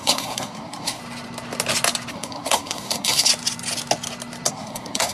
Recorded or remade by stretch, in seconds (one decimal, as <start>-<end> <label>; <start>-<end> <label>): 0.0-1.0 remade; 1.0-2.1 recorded; 2.1-3.3 remade; 3.3-4.5 recorded; 4.5-5.1 remade